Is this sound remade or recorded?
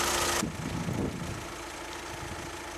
recorded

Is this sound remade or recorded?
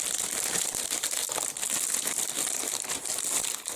recorded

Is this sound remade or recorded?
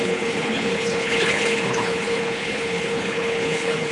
remade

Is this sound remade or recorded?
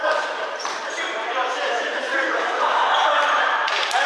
remade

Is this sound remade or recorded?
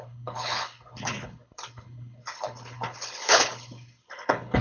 remade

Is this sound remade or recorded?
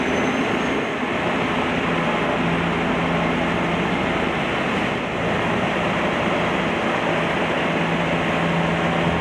recorded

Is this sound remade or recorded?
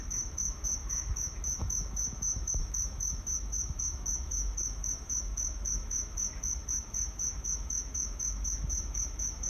remade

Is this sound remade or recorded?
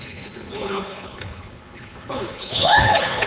remade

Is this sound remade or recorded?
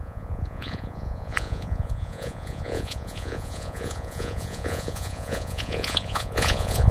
remade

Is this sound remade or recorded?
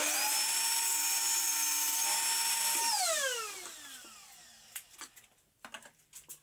recorded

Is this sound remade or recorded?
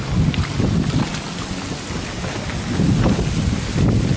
recorded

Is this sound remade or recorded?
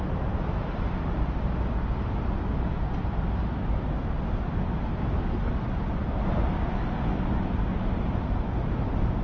recorded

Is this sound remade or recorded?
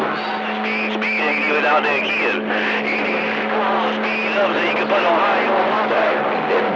recorded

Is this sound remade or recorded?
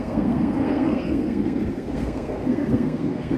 remade